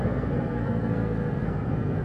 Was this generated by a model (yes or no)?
yes